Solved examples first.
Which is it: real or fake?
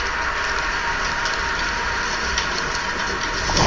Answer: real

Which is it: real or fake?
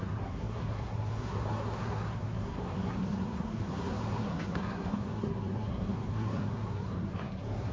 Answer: fake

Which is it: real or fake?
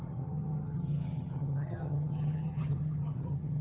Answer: fake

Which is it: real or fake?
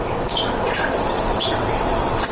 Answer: fake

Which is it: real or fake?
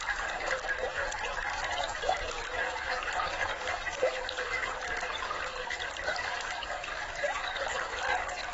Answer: fake